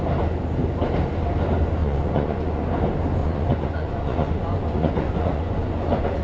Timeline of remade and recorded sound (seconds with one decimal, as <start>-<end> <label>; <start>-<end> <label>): 0.0-1.8 recorded; 1.8-2.6 remade; 2.6-3.2 recorded; 3.2-6.2 remade